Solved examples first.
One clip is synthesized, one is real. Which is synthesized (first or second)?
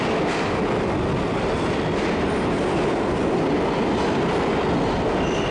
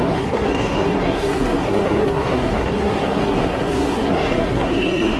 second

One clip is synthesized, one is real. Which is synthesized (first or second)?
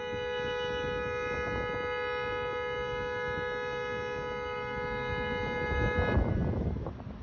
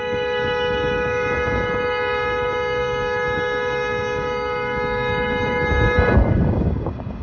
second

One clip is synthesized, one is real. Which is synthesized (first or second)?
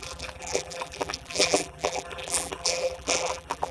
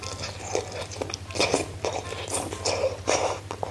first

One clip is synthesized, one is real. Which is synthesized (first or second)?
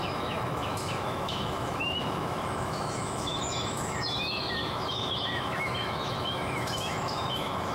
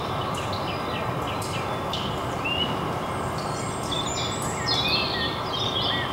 first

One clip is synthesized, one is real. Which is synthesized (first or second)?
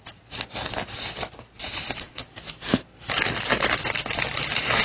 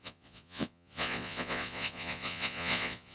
second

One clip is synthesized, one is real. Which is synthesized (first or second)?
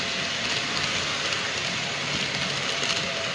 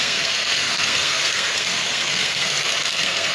second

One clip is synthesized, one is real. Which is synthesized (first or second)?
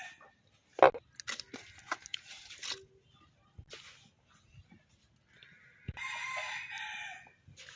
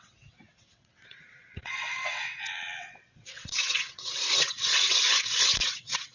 second